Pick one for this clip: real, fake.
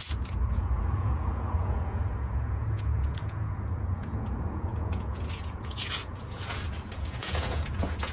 fake